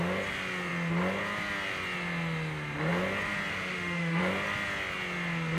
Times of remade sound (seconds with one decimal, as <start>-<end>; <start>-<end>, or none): 3.5-4.2